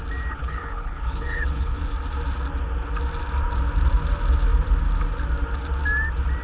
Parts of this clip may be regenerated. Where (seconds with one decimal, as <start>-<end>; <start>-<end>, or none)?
0.4-1.8